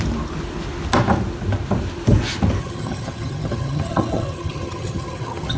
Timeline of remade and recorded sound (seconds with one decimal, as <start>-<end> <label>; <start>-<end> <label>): 0.0-2.6 recorded; 2.6-5.6 remade